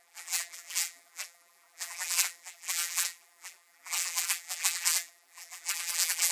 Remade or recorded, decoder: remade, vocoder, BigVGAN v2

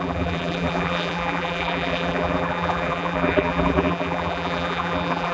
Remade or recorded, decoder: remade, vocoder, BigVGAN v2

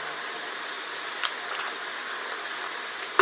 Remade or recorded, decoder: recorded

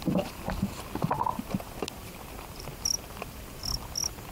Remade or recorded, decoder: recorded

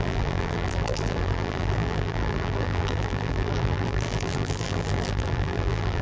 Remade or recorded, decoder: remade, vocoder, BigVGAN v2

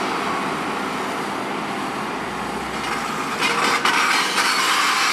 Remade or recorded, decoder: recorded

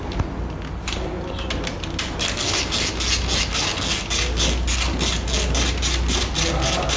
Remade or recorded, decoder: recorded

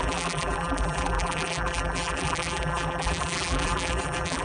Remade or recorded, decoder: remade, vocoder, BigVGAN v2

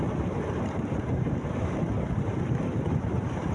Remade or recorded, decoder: remade, vocoder, BigVGAN v2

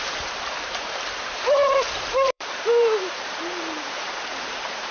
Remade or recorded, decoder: remade, vocoder, BigVGAN v2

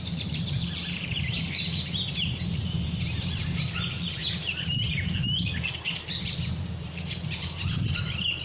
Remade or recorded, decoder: remade, vocoder, BigVGAN v2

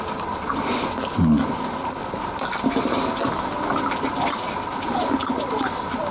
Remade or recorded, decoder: recorded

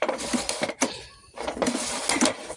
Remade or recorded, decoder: recorded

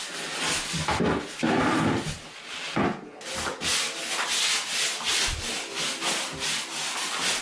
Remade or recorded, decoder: recorded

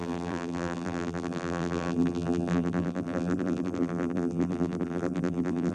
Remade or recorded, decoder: remade, vocoder, BigVGAN v2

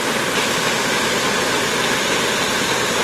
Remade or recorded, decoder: remade, vocoder, BigVGAN v2